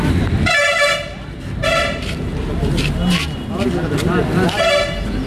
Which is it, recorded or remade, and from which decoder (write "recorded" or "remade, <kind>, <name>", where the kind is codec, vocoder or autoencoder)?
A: recorded